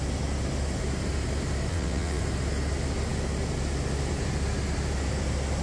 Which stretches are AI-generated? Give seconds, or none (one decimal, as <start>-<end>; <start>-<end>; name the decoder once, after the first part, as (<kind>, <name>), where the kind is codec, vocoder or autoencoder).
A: 1.7-2.2 (vocoder, WaveNeXt)